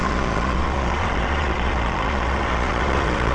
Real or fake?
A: fake